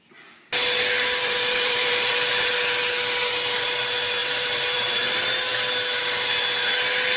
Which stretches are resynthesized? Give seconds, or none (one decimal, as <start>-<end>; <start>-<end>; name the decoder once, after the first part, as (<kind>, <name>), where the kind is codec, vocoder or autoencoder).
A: 1.2-2.5 (vocoder, BigVGAN v2); 4.2-5.2